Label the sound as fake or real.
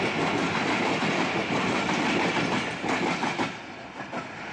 real